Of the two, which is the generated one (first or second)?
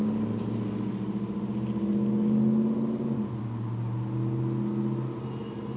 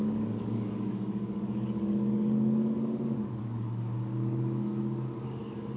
second